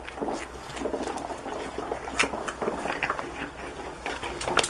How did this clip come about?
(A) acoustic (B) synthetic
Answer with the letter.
A